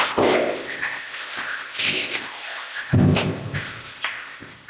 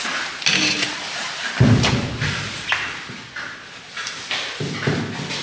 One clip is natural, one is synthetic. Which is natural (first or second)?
second